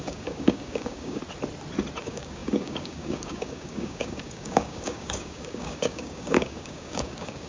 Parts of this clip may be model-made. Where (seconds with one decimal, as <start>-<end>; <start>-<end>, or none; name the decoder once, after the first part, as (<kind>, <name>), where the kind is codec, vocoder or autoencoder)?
0.0-1.2 (codec, DAC); 2.0-7.5